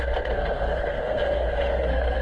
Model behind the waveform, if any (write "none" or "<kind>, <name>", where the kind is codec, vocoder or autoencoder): codec, SNAC